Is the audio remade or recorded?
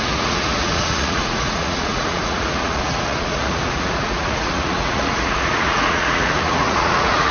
remade